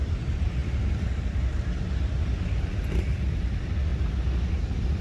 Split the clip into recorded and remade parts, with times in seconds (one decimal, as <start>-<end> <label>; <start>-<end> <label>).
0.0-3.9 remade; 3.9-4.5 recorded; 4.5-5.0 remade